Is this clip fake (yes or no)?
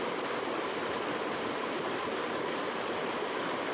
no